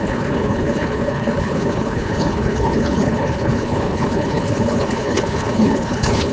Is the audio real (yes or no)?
no